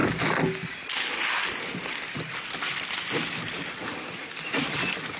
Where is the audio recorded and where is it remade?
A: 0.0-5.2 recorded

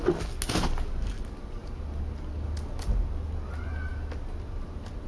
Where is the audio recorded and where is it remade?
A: 0.0-5.1 recorded